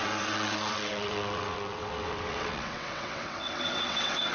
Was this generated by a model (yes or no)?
yes